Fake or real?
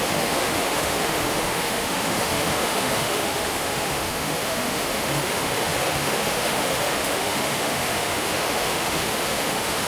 fake